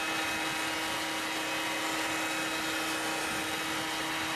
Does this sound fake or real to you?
real